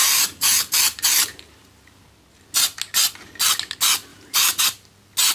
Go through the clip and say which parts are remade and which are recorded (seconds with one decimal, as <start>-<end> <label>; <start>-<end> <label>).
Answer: 0.0-2.0 remade; 2.0-4.1 recorded; 4.1-4.6 remade; 4.6-5.3 recorded